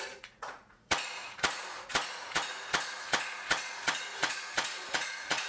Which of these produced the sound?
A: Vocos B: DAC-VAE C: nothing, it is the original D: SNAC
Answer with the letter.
A